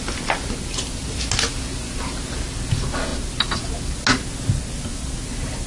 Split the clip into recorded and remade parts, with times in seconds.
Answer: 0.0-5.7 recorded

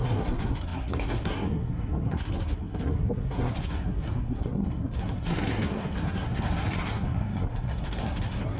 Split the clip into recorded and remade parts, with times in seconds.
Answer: 0.0-8.6 remade